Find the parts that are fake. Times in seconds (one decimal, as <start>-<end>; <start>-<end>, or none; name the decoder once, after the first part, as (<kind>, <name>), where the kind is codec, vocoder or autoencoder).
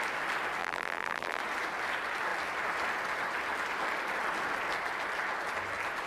0.6-1.4 (vocoder, BigVGAN v2)